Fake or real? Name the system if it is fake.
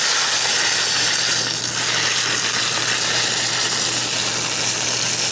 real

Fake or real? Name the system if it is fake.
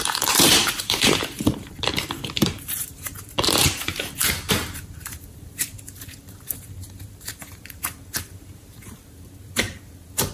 fake, vocoder, BigVGAN v2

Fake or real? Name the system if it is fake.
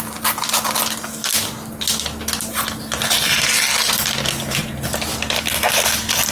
real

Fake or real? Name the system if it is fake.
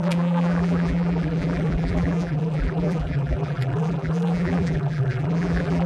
fake, vocoder, BigVGAN v2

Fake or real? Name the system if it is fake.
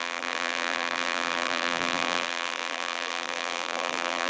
fake, vocoder, BigVGAN v2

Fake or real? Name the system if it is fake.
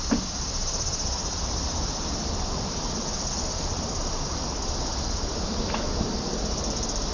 real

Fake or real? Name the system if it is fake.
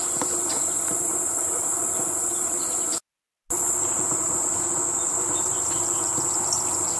real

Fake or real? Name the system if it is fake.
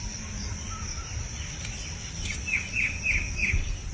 real